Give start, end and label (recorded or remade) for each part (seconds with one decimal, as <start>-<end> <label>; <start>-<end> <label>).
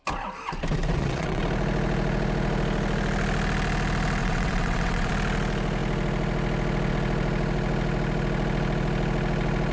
0.0-0.9 recorded; 0.9-1.4 remade; 1.4-4.2 recorded; 4.2-5.1 remade; 5.1-9.7 recorded